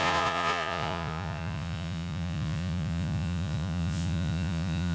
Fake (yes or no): yes